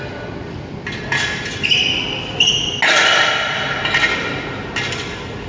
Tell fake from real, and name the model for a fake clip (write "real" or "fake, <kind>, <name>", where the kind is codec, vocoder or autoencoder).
real